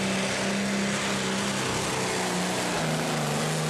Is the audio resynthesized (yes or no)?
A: no